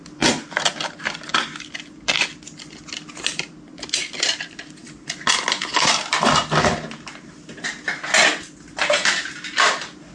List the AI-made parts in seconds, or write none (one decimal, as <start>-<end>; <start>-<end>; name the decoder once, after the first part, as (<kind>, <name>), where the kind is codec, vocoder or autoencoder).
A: none